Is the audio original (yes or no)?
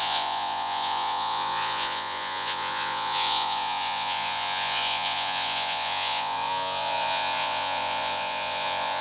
no